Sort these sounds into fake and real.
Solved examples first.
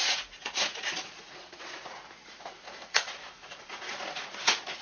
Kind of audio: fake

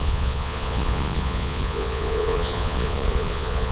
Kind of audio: fake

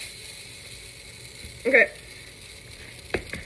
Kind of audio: real